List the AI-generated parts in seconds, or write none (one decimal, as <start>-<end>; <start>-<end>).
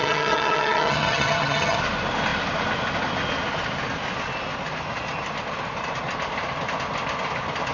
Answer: 0.0-1.8